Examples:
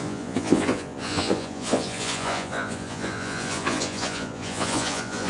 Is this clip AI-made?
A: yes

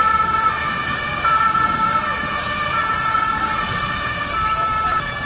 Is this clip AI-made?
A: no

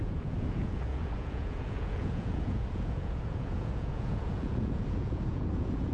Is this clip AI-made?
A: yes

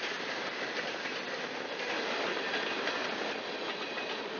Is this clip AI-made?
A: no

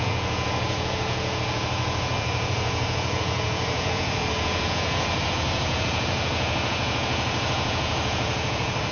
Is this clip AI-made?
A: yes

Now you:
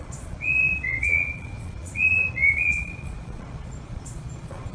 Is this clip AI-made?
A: yes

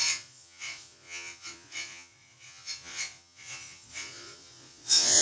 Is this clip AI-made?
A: yes